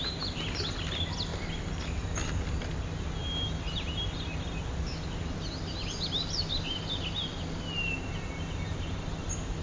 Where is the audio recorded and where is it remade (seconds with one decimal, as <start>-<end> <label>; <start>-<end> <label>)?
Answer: 0.0-1.3 recorded; 1.3-1.8 remade; 1.8-9.6 recorded